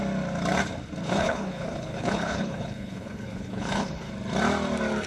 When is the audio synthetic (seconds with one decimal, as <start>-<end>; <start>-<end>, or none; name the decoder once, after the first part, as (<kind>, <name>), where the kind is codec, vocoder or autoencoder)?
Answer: 1.0-4.1 (codec, HILCodec)